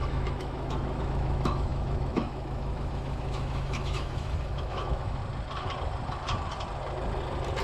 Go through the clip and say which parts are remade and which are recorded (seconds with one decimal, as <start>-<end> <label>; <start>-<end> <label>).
0.0-5.2 remade; 5.2-7.6 recorded